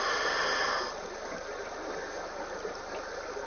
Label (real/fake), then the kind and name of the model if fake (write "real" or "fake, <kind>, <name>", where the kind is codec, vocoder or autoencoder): real